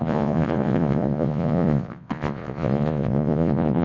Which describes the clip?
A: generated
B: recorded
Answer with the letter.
A